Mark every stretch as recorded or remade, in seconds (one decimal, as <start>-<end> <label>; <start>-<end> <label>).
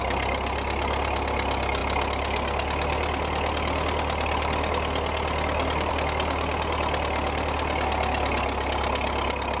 0.0-9.6 recorded